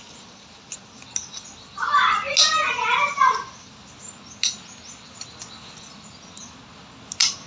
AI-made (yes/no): no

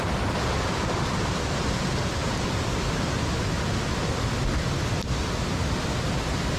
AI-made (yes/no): no